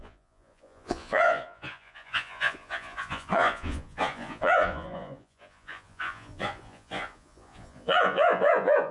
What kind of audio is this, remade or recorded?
remade